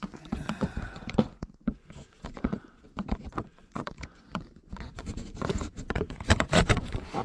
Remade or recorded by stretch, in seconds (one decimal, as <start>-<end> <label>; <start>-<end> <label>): 0.0-7.2 remade